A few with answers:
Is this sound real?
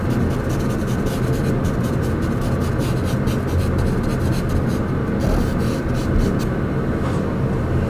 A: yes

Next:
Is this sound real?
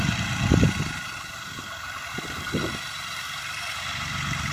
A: no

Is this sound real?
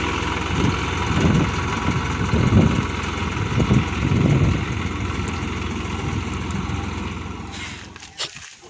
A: yes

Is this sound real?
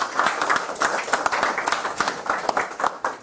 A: yes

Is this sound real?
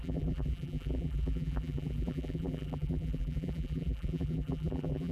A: no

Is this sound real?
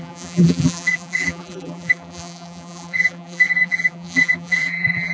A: no